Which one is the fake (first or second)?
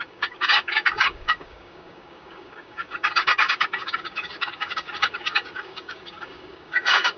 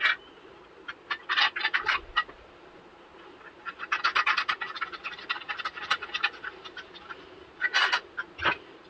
first